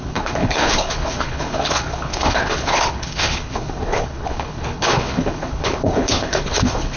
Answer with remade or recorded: remade